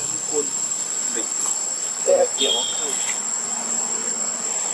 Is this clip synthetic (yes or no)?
no